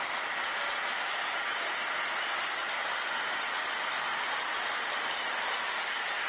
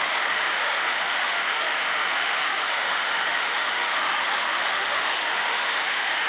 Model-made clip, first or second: second